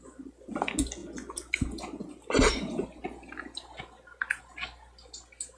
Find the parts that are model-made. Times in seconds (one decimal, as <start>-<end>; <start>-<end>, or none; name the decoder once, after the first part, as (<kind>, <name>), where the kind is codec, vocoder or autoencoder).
none